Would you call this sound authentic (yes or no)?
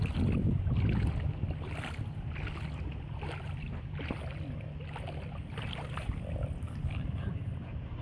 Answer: yes